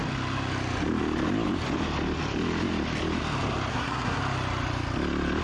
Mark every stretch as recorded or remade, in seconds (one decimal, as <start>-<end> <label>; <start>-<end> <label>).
0.0-3.7 recorded; 3.7-4.2 remade; 4.2-5.4 recorded